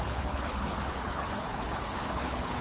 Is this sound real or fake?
fake